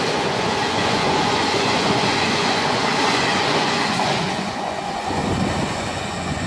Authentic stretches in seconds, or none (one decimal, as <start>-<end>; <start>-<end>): 5.2-5.7